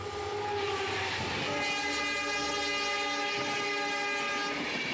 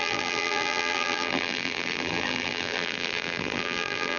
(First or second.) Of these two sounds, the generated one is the second